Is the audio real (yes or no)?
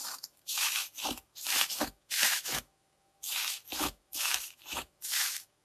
no